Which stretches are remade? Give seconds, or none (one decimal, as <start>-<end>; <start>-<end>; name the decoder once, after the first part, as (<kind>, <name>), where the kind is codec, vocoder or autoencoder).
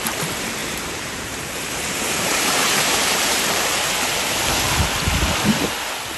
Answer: 0.6-4.3 (vocoder, BigVGAN v2)